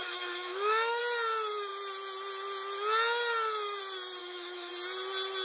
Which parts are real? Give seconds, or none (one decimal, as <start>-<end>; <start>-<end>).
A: 1.0-4.2; 4.7-5.4

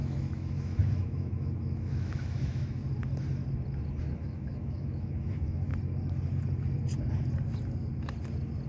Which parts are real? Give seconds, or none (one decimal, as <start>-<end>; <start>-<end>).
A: 2.8-4.0; 5.7-8.7